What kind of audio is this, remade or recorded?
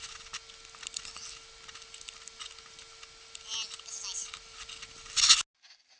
recorded